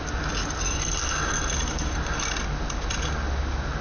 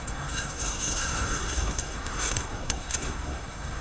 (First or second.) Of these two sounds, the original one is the first